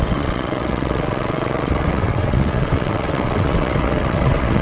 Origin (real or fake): fake